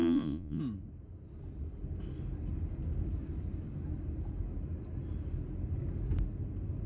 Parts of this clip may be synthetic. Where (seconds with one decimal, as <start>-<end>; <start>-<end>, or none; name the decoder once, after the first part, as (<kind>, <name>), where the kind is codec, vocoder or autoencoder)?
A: 0.0-0.6 (vocoder, Vocos)